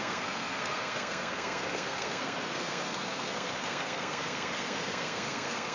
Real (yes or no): no